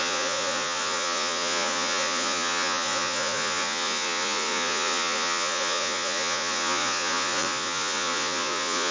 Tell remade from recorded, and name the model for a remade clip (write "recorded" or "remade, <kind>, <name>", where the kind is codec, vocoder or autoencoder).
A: remade, vocoder, Vocos